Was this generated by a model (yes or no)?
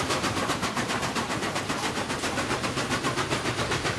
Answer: yes